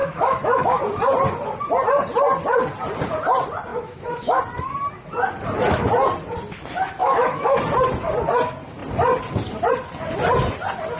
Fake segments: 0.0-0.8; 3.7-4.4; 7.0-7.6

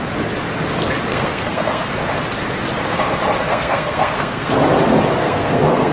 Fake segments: 1.1-1.9; 3.5-4.5; 5.2-5.9

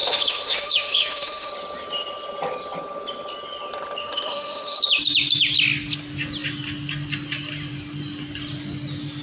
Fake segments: 0.0-1.5; 4.0-4.8

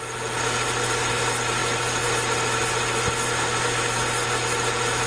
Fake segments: none

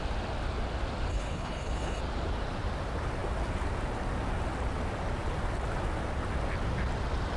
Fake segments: 1.1-2.0

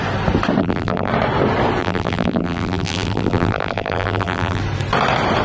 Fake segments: 0.6-1.1; 1.8-4.6